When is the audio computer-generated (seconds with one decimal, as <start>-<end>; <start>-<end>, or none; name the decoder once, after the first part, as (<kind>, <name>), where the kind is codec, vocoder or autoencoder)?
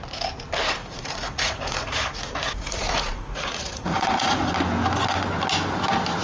0.8-4.5 (vocoder, Vocos)